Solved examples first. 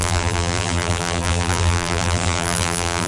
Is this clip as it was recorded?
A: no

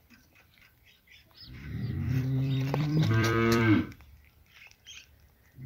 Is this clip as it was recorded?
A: no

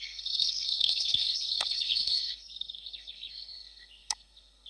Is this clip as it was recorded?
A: no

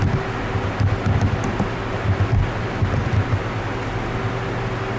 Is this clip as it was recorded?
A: yes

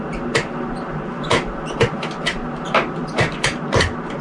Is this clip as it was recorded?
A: yes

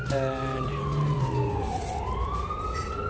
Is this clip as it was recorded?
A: yes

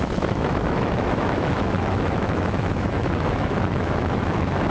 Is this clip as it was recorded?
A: no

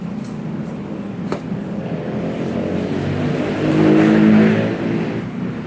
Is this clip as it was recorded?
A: yes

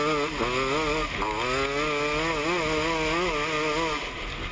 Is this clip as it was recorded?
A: yes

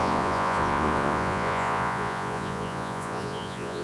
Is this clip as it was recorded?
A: no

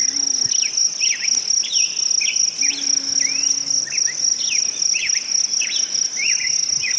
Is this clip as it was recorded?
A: yes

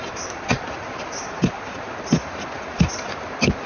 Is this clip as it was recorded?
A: yes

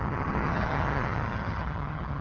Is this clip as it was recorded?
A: no